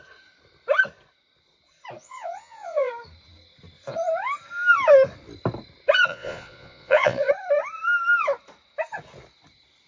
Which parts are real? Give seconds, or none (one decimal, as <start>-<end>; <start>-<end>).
0.0-2.0; 2.9-6.1; 7.3-9.9